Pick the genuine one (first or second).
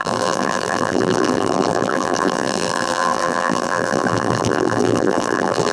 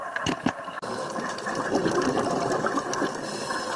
second